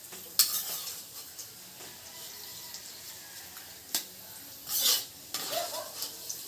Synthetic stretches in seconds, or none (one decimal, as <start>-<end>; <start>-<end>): 0.8-1.5; 2.5-3.2